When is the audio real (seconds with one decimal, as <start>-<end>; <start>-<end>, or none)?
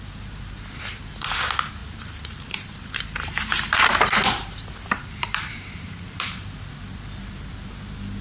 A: 0.0-1.8; 6.7-8.2